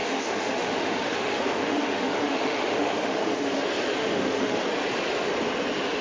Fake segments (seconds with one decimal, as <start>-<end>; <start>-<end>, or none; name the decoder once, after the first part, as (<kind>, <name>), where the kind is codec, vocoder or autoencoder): 0.0-3.6 (autoencoder, DAC-VAE); 4.0-4.6